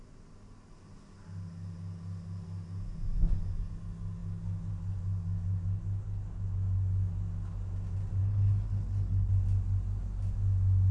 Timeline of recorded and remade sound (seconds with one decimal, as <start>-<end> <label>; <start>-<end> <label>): 0.0-8.2 recorded; 8.2-9.3 remade; 9.3-10.9 recorded